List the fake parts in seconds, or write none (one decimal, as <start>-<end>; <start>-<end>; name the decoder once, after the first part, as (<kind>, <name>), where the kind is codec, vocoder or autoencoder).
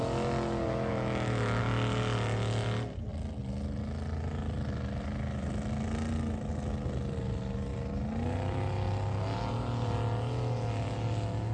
0.9-1.6 (autoencoder, DAC-VAE)